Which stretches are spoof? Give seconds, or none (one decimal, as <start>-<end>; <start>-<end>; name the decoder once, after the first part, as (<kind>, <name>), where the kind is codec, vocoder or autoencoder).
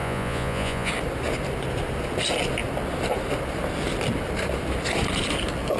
0.0-0.9 (vocoder, Vocos)